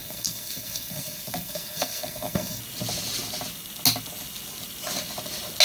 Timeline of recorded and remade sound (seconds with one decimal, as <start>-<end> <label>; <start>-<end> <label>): 0.0-2.6 remade; 2.6-5.6 recorded

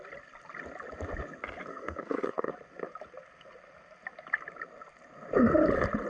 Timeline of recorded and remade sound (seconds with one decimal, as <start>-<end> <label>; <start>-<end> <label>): 0.0-1.7 recorded; 1.7-2.5 remade; 2.5-6.1 recorded